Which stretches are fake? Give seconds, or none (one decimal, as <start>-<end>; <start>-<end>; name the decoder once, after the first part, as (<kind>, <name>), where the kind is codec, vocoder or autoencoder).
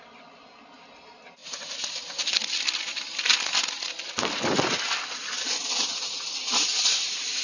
none